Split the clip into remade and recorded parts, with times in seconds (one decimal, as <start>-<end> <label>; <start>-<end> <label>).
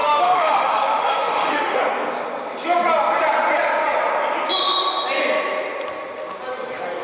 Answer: 0.0-1.8 remade; 1.8-7.0 recorded